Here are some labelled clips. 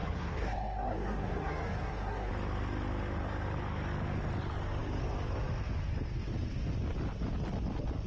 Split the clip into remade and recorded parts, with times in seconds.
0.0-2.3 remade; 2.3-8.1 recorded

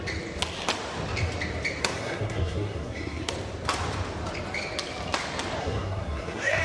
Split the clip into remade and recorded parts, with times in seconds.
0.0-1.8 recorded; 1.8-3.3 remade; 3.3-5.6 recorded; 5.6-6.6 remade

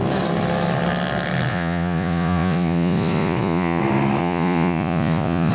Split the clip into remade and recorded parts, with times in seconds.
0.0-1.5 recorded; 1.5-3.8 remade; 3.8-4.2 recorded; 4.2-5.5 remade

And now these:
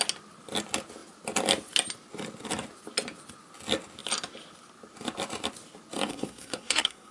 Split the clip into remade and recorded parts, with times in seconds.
0.0-6.1 recorded; 6.1-7.1 remade

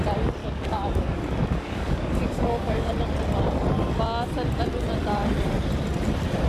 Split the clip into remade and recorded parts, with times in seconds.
0.0-0.4 recorded; 0.4-2.9 remade; 2.9-6.5 recorded

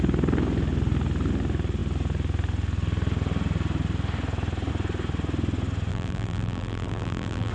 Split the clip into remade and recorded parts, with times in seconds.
0.0-5.9 recorded; 5.9-7.5 remade

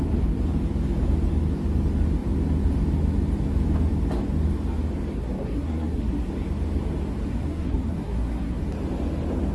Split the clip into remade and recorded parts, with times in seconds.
0.0-5.2 recorded; 5.2-6.3 remade; 6.3-7.3 recorded; 7.3-8.6 remade; 8.6-9.5 recorded